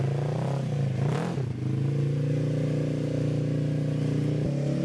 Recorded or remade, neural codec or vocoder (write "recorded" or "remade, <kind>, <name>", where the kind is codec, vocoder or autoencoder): recorded